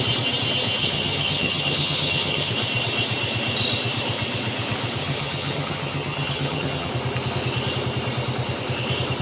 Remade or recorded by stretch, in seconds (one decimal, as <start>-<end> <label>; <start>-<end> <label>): 0.0-0.8 recorded; 0.8-2.5 remade; 2.5-5.0 recorded; 5.0-6.9 remade; 6.9-9.2 recorded